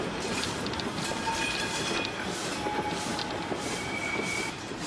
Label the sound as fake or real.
fake